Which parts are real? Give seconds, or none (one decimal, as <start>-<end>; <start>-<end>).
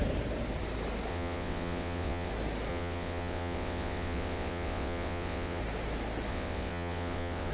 0.0-1.1; 2.3-2.7; 5.6-6.3